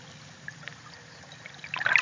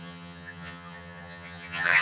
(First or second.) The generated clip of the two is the second